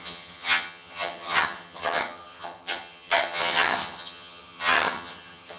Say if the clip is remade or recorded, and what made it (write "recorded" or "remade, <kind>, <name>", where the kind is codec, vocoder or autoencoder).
remade, vocoder, HiFi-GAN